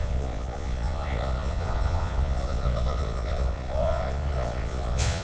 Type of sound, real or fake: fake